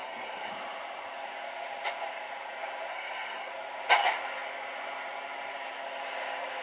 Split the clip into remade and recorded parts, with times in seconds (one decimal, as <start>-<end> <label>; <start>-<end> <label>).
0.0-0.5 remade; 0.5-2.9 recorded; 2.9-3.5 remade; 3.5-6.6 recorded